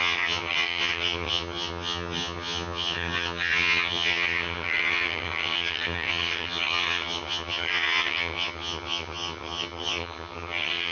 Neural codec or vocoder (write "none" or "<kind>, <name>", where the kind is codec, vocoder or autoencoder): vocoder, HiFi-GAN